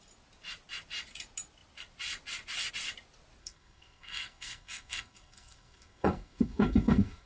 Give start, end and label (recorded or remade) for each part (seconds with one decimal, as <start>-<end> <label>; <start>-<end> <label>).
0.0-3.4 recorded; 3.4-7.3 remade